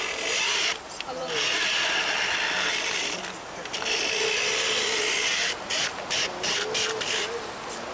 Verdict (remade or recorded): recorded